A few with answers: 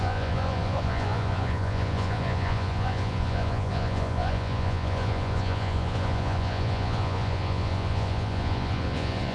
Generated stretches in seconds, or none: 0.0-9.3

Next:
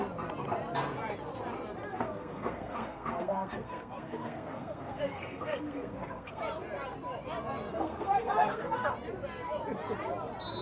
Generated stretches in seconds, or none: 1.9-6.4; 7.7-8.9

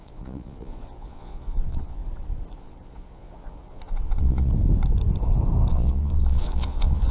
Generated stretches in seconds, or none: 0.0-2.0; 2.5-4.5; 5.7-7.1